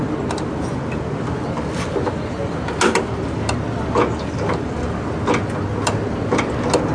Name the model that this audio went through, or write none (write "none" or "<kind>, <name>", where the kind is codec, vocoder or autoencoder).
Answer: none